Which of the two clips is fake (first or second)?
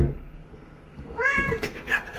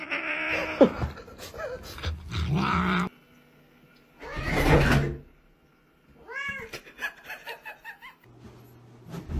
first